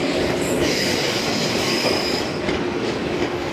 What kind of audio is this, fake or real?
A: fake